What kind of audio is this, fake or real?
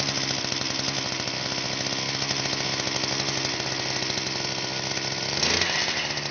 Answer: real